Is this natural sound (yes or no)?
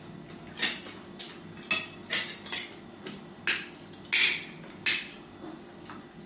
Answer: yes